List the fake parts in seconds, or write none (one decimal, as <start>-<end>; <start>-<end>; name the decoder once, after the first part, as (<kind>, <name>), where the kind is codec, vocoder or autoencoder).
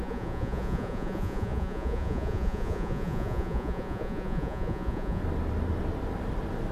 0.0-5.2 (vocoder, Vocos)